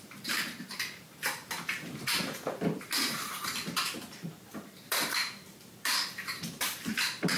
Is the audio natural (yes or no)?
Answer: no